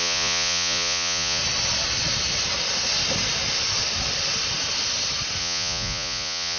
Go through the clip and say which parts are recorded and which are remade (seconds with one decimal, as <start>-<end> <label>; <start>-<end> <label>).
0.0-1.4 remade; 1.4-5.4 recorded; 5.4-6.6 remade